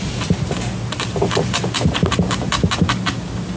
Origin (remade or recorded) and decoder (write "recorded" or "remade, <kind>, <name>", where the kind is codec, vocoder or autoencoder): recorded